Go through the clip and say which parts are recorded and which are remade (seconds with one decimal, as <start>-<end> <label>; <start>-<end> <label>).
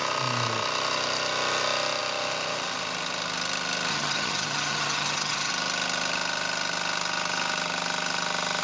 0.0-3.9 recorded; 3.9-5.5 remade; 5.5-8.6 recorded